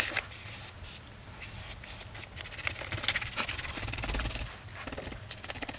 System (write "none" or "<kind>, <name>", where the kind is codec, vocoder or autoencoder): none